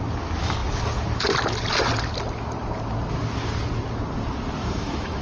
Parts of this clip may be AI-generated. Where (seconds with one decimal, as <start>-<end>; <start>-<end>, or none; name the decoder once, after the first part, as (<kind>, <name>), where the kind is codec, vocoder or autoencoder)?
4.6-5.2 (autoencoder, DAC-VAE)